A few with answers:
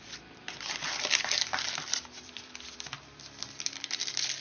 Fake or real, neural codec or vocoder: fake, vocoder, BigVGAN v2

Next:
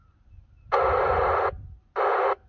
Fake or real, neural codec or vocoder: real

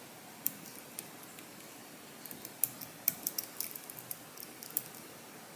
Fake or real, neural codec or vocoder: real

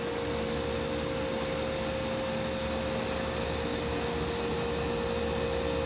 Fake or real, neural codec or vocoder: real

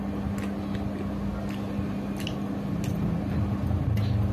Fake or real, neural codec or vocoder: real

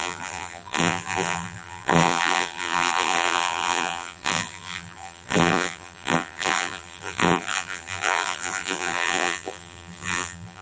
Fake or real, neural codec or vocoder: fake, vocoder, BigVGAN v2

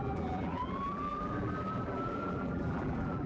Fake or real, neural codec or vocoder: fake, vocoder, BigVGAN v2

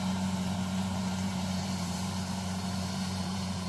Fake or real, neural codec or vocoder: fake, vocoder, BigVGAN v2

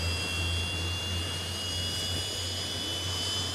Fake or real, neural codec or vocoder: real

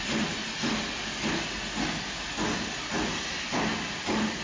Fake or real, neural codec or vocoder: real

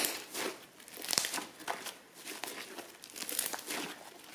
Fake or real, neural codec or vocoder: real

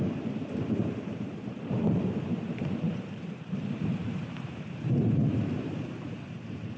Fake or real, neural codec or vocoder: fake, vocoder, BigVGAN v2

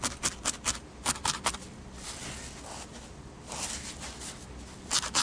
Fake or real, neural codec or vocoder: real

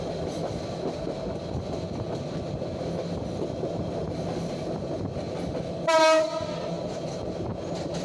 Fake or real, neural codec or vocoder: real